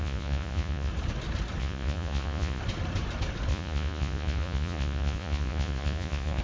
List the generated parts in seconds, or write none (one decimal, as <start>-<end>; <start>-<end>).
0.0-0.9; 1.6-2.6; 3.5-6.4